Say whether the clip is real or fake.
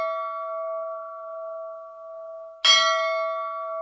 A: real